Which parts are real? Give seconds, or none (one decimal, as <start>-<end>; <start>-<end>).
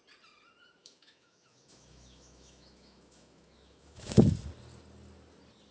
0.0-0.8; 4.2-5.7